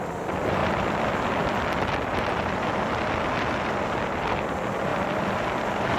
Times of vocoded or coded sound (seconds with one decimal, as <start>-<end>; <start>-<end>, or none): 0.0-0.6; 4.2-6.0